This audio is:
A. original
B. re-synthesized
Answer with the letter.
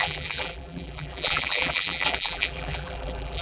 B